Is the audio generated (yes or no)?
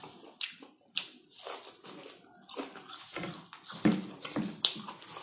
no